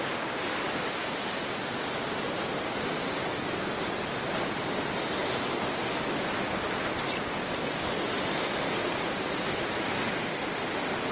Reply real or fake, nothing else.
real